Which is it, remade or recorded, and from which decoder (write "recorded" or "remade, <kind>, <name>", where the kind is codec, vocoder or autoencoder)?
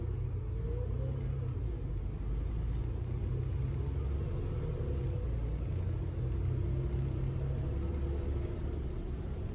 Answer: recorded